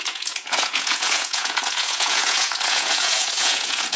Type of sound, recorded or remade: remade